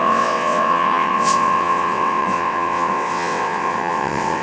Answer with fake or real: fake